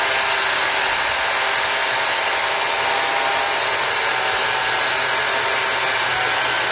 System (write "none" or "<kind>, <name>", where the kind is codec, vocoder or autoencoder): none